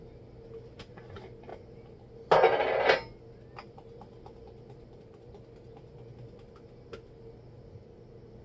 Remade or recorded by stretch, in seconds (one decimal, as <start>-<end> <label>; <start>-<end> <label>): 0.0-8.4 recorded